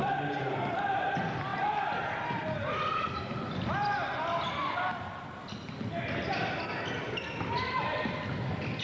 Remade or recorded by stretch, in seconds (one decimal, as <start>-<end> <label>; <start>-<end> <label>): 0.0-8.8 recorded